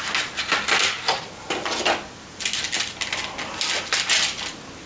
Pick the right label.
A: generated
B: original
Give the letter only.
B